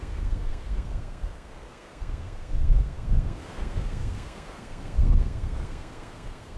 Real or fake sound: fake